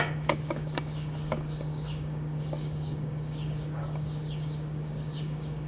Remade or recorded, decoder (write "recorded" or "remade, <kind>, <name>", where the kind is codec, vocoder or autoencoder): remade, codec, DAC